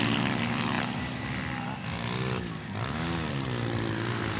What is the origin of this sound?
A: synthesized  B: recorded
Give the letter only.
B